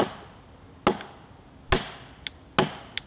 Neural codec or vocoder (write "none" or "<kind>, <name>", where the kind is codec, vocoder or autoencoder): none